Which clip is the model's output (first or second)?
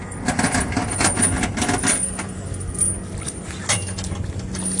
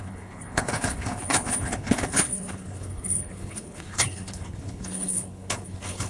second